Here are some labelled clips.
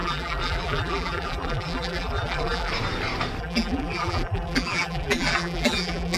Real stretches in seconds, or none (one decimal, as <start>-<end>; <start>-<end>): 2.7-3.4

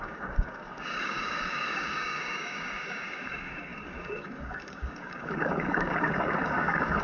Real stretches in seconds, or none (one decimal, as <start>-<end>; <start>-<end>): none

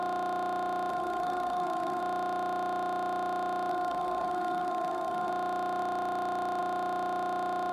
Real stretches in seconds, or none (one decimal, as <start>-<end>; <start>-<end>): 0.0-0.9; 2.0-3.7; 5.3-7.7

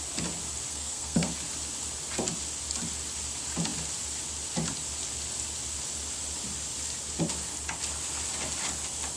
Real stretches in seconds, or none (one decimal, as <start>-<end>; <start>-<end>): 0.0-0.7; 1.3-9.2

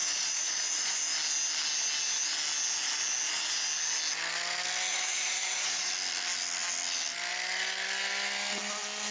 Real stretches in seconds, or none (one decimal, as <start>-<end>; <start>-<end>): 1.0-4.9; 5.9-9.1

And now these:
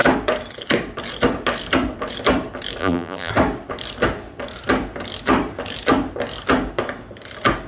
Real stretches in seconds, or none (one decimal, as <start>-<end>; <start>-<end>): 0.0-2.8; 3.3-7.7